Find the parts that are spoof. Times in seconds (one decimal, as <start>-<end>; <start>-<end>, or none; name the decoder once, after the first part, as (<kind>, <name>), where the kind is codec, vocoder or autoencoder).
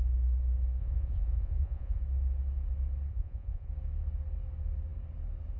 0.8-2.0 (vocoder, Vocos); 3.1-3.7